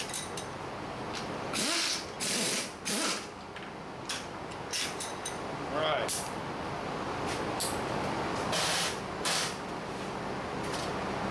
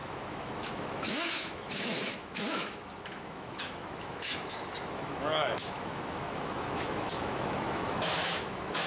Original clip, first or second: first